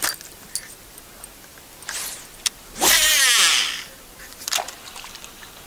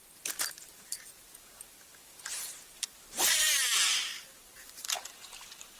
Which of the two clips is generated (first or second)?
second